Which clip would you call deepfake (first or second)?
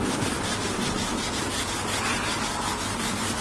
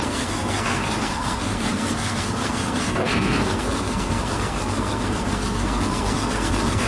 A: second